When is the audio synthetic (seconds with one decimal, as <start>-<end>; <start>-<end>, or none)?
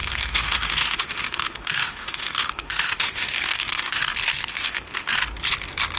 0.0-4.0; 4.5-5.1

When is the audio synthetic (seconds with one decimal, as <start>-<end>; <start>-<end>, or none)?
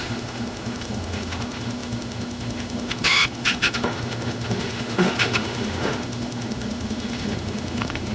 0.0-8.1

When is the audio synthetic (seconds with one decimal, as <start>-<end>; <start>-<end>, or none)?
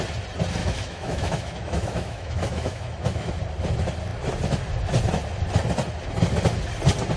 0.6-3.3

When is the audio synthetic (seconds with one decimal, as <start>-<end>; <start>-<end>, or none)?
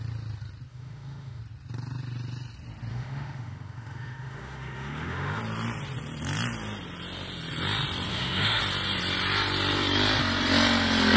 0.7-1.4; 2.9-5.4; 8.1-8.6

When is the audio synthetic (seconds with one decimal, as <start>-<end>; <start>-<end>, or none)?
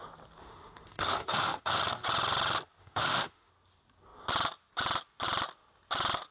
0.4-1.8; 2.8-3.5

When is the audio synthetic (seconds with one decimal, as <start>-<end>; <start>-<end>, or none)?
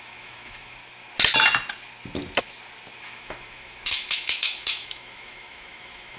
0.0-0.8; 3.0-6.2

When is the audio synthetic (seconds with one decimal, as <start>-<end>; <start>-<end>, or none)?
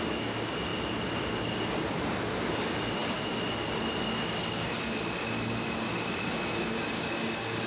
none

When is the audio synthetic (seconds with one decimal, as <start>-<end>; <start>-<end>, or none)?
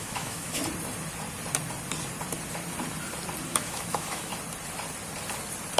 0.0-0.6; 3.5-4.3